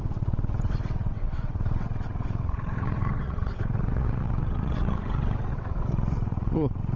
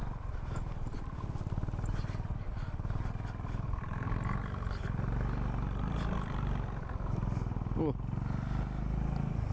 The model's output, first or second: first